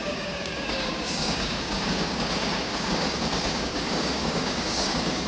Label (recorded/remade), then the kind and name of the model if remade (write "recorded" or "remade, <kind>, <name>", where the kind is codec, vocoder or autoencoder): remade, codec, DAC